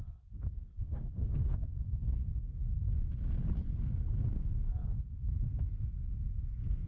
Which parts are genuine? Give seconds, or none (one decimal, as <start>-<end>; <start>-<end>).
2.6-3.6